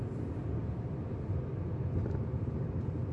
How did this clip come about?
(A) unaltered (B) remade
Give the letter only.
A